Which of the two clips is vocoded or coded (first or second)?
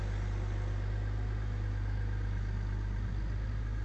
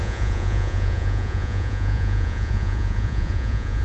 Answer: second